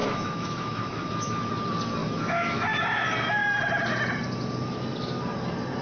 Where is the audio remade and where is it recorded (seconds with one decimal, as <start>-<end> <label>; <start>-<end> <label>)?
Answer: 0.0-1.5 remade; 1.5-2.0 recorded; 2.0-2.8 remade; 2.8-5.8 recorded